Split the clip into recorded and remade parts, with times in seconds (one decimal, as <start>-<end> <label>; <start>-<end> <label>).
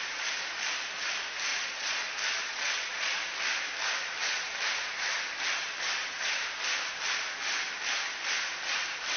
0.0-1.5 recorded; 1.5-2.1 remade; 2.1-2.5 recorded; 2.5-3.1 remade; 3.1-9.2 recorded